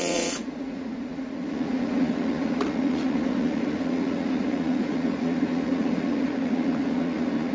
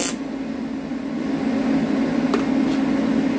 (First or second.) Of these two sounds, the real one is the second